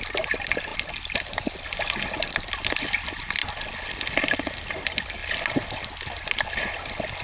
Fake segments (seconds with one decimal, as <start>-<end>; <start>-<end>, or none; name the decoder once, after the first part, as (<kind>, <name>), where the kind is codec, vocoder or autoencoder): none